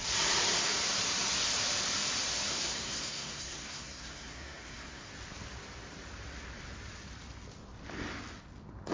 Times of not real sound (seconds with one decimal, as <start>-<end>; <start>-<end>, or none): 2.5-5.1